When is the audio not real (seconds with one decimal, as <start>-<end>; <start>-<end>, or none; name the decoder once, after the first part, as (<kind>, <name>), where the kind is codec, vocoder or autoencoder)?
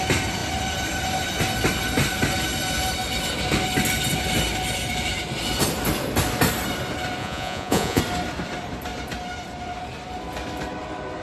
7.2-8.0 (vocoder, Vocos)